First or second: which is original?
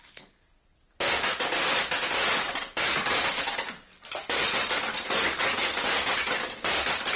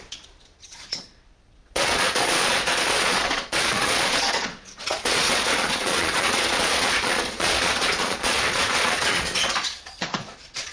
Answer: first